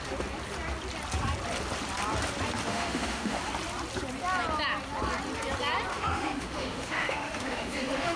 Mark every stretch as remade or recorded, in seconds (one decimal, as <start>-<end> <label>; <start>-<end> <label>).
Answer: 0.0-2.7 recorded; 2.7-3.4 remade; 3.4-5.9 recorded; 5.9-8.2 remade